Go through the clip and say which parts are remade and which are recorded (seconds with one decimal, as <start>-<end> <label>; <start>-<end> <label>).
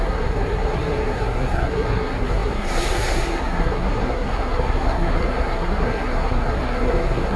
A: 0.0-7.4 remade